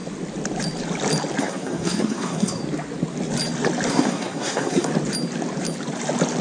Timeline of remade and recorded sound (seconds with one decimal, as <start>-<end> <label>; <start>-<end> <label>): 0.0-1.4 recorded; 1.4-2.6 remade; 2.6-3.9 recorded; 3.9-4.9 remade; 4.9-6.4 recorded